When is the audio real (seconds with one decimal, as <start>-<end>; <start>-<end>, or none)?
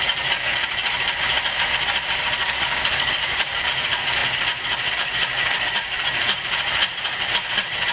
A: 0.0-2.4; 3.1-7.9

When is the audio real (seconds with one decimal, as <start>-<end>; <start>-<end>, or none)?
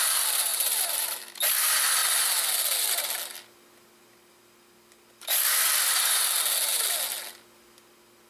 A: 0.0-0.5; 1.5-8.3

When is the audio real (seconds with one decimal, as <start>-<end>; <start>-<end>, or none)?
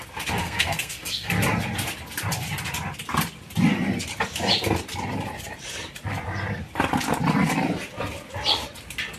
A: 0.0-0.4; 1.3-9.2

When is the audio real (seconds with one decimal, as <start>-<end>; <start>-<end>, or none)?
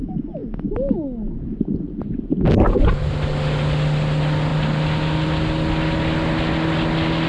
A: 0.0-7.3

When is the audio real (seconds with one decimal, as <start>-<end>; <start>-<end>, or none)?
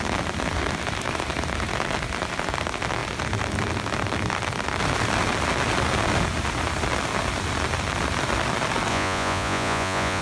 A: 0.0-8.9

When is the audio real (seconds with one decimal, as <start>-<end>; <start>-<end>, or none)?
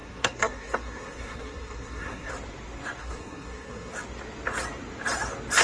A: 2.3-3.0; 3.9-5.6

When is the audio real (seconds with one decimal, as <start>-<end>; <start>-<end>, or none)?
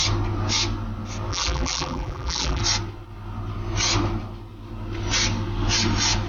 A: 0.0-1.3; 2.6-6.3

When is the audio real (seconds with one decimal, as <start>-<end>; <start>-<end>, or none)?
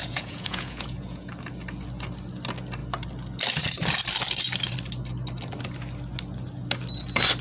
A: 1.3-7.4